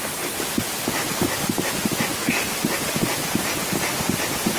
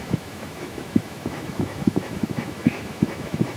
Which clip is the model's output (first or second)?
second